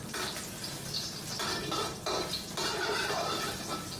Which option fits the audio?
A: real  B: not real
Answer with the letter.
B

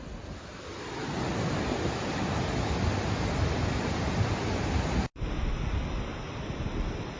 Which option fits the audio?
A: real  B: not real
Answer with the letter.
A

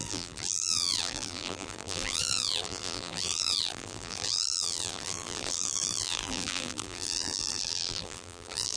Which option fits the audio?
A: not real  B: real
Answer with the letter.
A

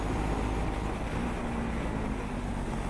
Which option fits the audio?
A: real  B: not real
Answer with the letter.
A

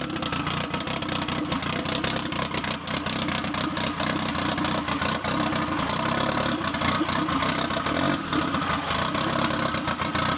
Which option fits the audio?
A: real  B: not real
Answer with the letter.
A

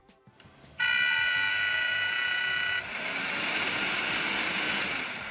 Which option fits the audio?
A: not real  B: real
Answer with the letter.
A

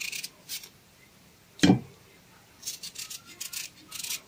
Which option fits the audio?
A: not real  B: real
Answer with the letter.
B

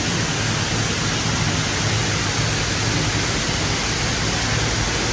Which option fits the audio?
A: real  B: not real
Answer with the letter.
A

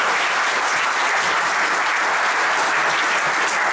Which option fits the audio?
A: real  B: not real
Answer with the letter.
A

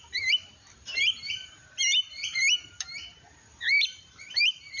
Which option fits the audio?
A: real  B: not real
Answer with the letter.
B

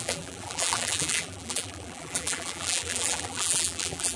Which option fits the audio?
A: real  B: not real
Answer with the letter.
B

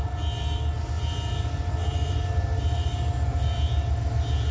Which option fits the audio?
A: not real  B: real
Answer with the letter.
B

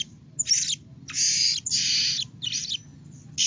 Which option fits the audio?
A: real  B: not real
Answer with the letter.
A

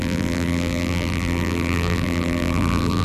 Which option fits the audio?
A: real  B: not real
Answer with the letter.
B